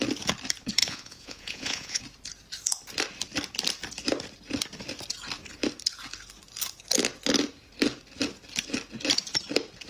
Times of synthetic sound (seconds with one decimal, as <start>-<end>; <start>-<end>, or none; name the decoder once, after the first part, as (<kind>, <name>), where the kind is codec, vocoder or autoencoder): 0.8-2.0 (vocoder, Vocos)